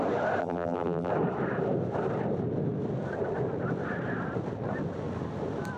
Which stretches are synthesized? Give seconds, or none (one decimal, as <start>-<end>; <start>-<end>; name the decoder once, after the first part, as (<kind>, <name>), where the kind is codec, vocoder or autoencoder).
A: 0.4-1.1 (vocoder, BigVGAN v2)